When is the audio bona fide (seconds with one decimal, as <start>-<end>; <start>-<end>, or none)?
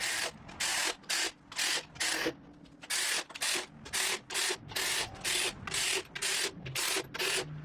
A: 0.0-7.6